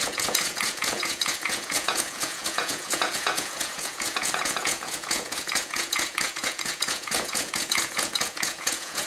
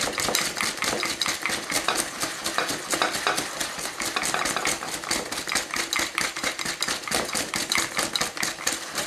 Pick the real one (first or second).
second